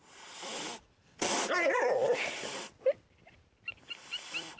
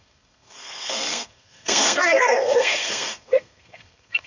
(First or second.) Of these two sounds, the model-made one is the second